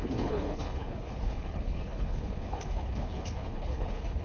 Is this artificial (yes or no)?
yes